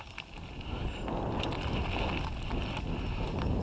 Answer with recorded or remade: recorded